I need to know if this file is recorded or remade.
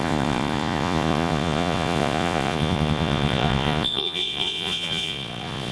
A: remade